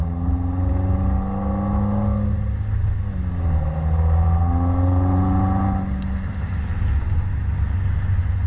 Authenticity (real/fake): real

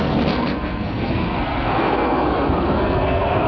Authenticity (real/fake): fake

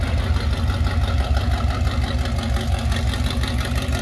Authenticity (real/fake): real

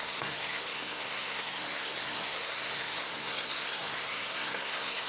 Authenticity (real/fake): fake